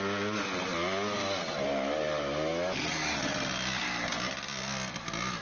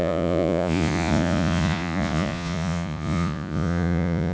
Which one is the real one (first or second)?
first